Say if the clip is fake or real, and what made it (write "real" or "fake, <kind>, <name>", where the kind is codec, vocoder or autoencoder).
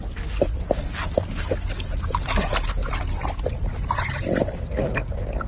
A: real